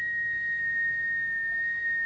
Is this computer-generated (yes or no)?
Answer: no